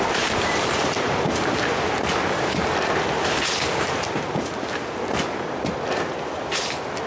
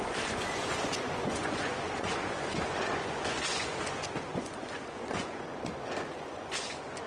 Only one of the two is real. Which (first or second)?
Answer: first